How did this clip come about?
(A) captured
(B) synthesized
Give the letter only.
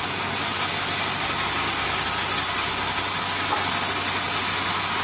A